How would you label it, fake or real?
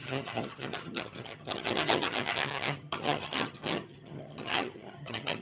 fake